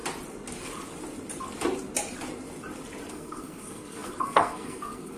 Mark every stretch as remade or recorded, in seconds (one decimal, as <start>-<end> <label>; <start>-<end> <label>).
0.0-3.1 recorded; 3.1-5.2 remade